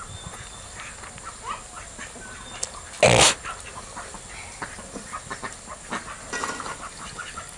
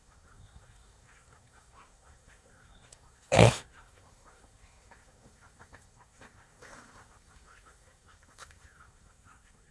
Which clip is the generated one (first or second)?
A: second